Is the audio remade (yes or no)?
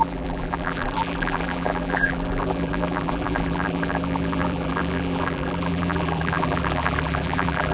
yes